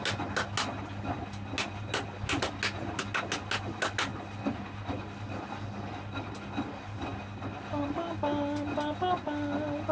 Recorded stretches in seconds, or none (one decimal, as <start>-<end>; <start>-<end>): 0.0-9.9